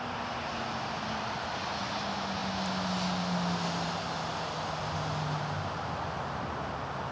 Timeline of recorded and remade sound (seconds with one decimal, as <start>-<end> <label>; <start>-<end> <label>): 0.0-7.1 recorded